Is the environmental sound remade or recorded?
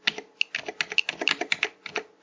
recorded